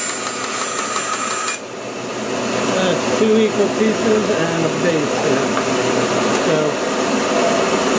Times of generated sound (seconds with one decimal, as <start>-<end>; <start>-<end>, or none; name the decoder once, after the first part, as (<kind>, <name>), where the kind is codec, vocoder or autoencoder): none